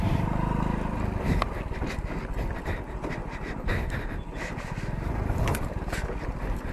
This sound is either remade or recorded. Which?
recorded